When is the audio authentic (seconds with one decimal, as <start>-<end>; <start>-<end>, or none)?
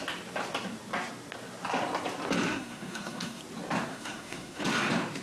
0.0-2.5; 3.4-3.9; 4.6-5.2